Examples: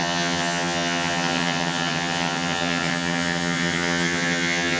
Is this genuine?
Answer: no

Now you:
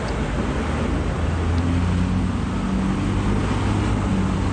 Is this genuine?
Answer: yes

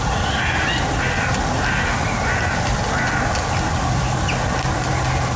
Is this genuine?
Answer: yes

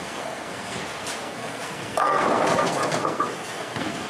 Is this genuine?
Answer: no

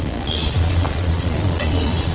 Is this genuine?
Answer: no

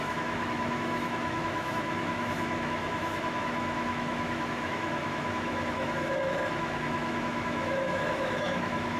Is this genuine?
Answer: no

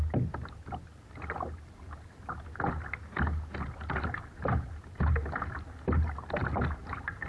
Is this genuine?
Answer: yes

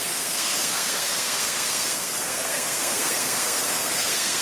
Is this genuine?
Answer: no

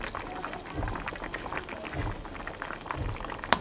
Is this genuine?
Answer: yes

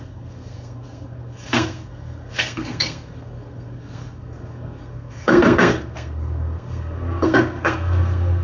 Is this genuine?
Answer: no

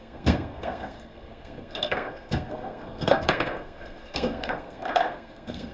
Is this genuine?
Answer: no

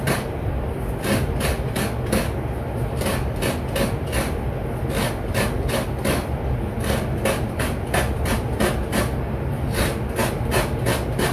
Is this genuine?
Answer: yes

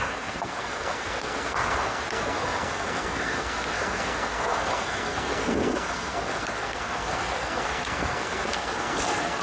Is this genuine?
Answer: no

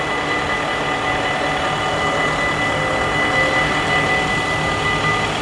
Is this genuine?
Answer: yes